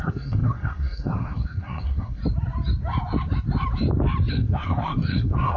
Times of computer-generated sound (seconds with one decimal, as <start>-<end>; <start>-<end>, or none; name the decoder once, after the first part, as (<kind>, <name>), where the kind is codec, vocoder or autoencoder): 0.0-2.2 (codec, SNAC); 4.3-5.6